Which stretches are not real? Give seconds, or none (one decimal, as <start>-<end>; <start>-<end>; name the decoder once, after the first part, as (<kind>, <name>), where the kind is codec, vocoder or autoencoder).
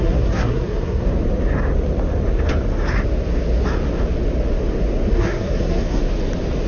0.0-1.1 (codec, SNAC); 5.1-6.0